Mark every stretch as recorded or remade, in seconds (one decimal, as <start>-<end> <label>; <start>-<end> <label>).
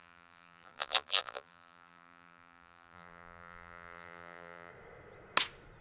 0.0-4.7 remade; 4.7-5.8 recorded